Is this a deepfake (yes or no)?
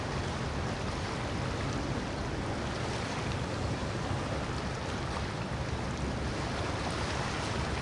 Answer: no